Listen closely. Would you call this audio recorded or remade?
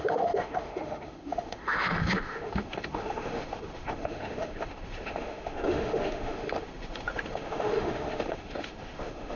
remade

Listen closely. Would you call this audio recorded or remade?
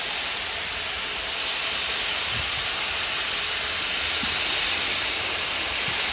recorded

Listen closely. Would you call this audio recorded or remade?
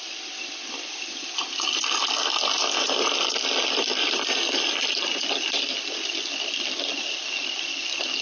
recorded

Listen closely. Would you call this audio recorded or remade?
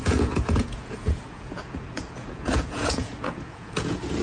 remade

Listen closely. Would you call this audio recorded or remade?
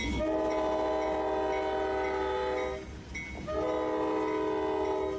recorded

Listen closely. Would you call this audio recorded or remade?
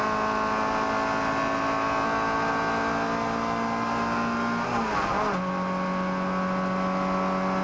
recorded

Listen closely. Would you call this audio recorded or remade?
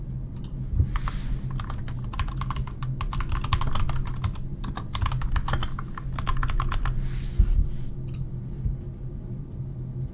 recorded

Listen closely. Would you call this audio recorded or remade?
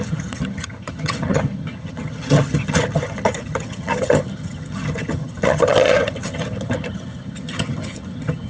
remade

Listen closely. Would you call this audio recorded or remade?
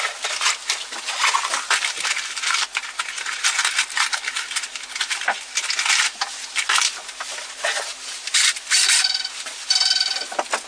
recorded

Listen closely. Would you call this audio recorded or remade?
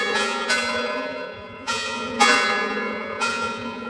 remade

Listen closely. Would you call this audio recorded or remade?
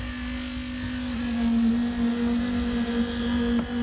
recorded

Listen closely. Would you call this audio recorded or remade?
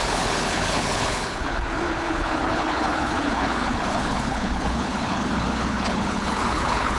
remade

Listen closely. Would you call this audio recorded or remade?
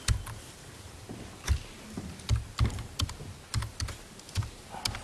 recorded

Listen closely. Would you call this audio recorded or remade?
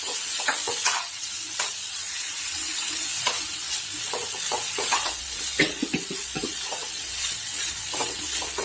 remade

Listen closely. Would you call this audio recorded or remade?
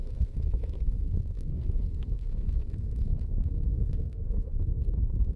remade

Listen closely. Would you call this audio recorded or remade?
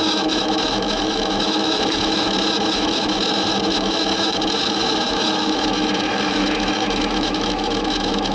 remade